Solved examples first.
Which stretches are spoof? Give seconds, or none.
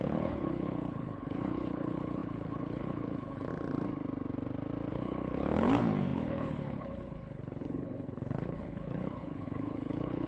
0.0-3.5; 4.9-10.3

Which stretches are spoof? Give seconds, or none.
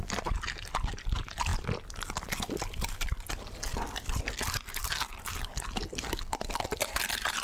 none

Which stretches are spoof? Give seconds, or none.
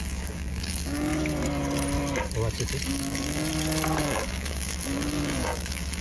0.0-1.1; 2.9-3.5; 4.0-6.0